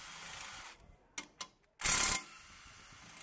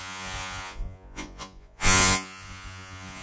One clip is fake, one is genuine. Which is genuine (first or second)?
first